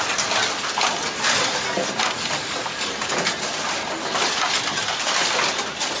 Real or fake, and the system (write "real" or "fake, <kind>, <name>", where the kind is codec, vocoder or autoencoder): real